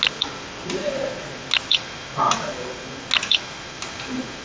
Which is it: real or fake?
real